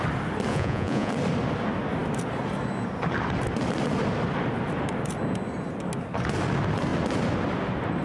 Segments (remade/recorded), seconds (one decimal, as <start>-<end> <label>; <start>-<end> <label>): 0.0-0.5 recorded; 0.5-1.1 remade; 1.1-8.0 recorded